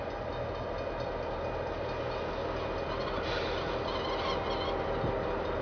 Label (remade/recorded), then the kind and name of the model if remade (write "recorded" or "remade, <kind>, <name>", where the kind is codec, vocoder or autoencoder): recorded